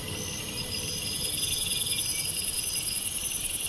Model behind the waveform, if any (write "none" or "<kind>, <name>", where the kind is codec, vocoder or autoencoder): none